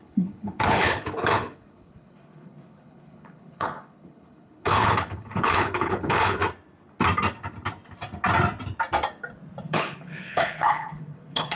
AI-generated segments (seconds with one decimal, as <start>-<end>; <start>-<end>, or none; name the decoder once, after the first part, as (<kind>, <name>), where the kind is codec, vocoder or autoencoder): 0.0-6.4 (codec, HILCodec); 9.6-11.6